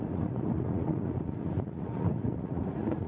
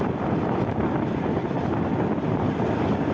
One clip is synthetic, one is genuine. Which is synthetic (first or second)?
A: first